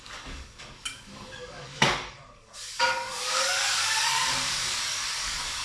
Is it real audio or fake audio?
fake